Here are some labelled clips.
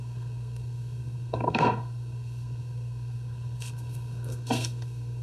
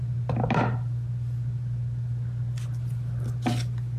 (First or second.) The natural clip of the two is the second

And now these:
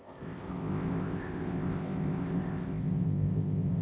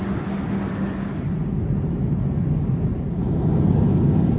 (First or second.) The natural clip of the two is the second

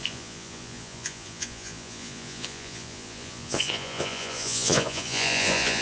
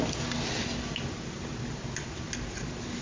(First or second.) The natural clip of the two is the second